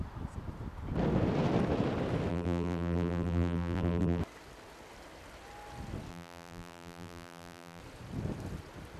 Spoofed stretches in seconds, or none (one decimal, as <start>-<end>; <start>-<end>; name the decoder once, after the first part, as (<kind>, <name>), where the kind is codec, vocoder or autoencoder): 2.3-4.2 (vocoder, BigVGAN v2); 6.1-7.8